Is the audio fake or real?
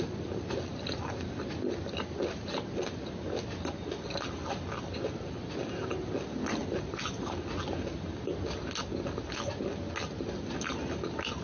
real